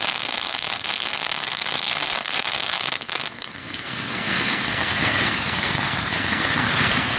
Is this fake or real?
fake